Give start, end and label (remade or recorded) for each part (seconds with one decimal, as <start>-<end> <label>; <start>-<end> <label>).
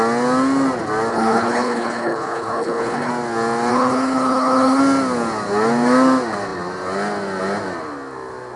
0.0-1.1 recorded; 1.1-3.1 remade; 3.1-3.7 recorded; 3.7-4.8 remade; 4.8-8.6 recorded